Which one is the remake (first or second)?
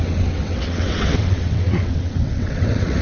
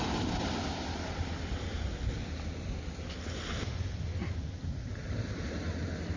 first